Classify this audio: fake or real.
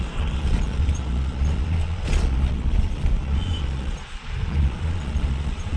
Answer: fake